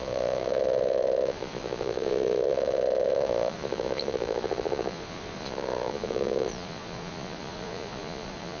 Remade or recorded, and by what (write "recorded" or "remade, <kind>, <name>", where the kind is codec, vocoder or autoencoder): remade, vocoder, Vocos